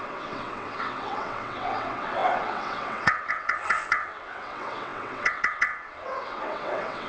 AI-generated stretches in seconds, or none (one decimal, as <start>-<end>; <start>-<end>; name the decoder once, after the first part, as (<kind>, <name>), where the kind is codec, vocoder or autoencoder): 0.0-7.1 (vocoder, WaveNeXt)